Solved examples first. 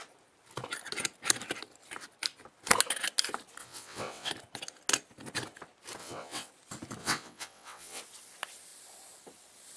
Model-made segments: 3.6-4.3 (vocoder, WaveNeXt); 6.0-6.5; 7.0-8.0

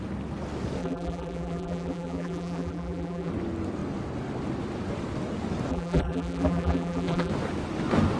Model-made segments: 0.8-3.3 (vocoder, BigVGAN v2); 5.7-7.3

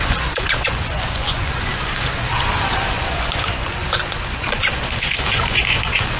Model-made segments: 0.0-6.2 (vocoder, Vocos)

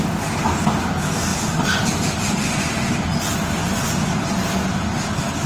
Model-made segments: none

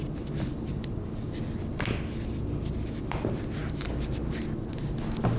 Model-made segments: none

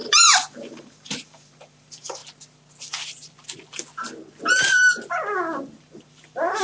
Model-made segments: 0.7-2.2 (vocoder, BigVGAN v2); 5.8-6.6